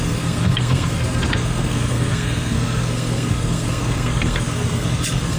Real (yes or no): no